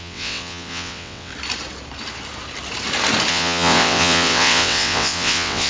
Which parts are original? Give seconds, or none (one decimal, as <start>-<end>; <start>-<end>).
1.3-3.3